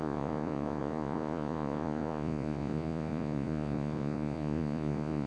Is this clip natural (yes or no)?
no